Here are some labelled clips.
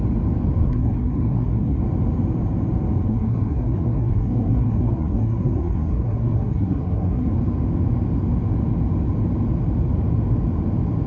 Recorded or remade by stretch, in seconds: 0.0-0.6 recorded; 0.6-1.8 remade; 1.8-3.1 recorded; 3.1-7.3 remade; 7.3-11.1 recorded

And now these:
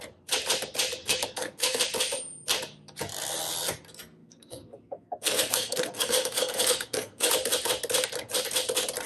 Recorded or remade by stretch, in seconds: 0.0-1.0 recorded; 1.0-1.8 remade; 1.8-4.2 recorded; 4.2-7.3 remade; 7.3-9.1 recorded

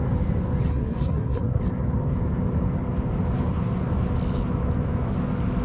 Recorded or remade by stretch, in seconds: 0.0-0.7 recorded; 0.7-1.6 remade; 1.6-5.6 recorded

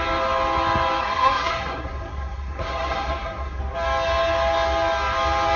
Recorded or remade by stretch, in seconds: 0.0-1.0 recorded; 1.0-3.6 remade; 3.6-5.6 recorded